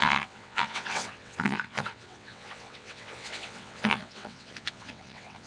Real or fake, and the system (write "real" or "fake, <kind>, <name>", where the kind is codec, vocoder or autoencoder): fake, vocoder, WaveNeXt